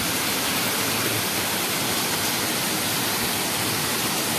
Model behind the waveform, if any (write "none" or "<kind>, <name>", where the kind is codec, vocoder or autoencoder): none